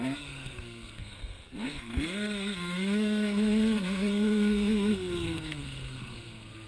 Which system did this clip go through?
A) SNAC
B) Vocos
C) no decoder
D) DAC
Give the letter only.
A